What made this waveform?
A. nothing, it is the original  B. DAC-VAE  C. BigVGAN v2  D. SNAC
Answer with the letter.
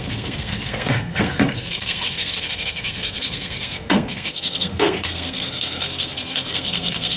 D